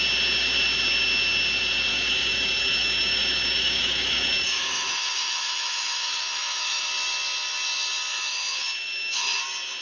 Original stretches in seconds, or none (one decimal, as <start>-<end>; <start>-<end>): 0.0-1.9; 6.9-8.1; 9.4-9.8